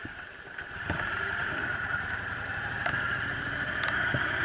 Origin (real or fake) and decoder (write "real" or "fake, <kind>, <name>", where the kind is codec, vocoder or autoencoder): real